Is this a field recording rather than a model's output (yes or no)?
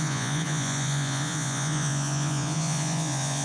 no